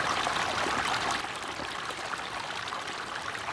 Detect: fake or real fake